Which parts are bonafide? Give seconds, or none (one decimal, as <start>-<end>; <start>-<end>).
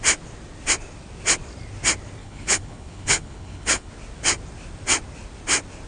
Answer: 0.0-2.2; 3.9-5.9